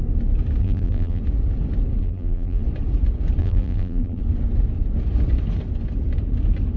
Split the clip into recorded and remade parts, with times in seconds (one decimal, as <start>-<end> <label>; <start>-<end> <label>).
0.0-0.6 recorded; 0.6-1.2 remade; 1.2-2.0 recorded; 2.0-2.6 remade; 2.6-3.4 recorded; 3.4-4.2 remade; 4.2-6.8 recorded

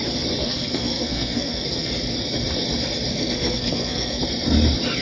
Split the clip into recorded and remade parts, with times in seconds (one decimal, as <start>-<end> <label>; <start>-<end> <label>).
0.0-0.4 recorded; 0.4-1.9 remade; 1.9-3.1 recorded; 3.1-4.2 remade; 4.2-5.0 recorded

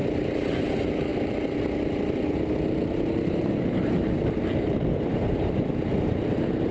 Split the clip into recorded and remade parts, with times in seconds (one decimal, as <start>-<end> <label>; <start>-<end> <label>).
0.0-6.7 recorded

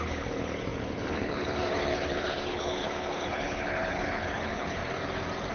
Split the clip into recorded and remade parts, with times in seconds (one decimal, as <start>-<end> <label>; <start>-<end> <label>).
0.0-4.8 remade; 4.8-5.5 recorded

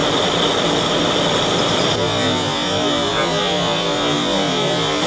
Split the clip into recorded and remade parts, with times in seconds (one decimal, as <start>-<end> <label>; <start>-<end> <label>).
0.0-5.1 recorded

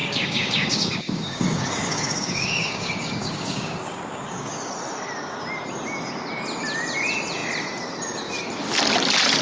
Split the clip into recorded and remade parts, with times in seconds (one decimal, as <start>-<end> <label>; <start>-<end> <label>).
0.0-4.7 remade; 4.7-9.4 recorded